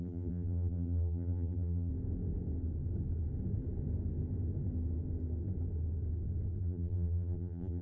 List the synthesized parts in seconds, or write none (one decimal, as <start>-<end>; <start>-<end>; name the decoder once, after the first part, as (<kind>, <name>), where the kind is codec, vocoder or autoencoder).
0.0-1.9 (vocoder, BigVGAN v2); 6.6-7.8